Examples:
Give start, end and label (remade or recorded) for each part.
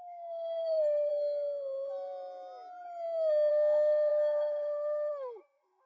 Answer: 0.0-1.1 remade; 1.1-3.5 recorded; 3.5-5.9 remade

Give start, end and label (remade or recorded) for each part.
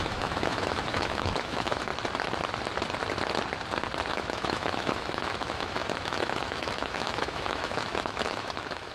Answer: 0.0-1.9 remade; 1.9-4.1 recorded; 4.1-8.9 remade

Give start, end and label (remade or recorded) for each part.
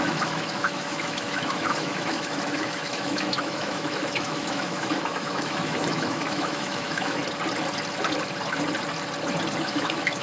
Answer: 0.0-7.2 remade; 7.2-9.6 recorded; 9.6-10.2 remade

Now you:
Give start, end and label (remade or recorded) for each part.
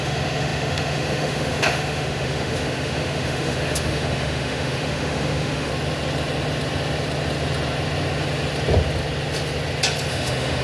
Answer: 0.0-5.7 remade; 5.7-10.1 recorded; 10.1-10.6 remade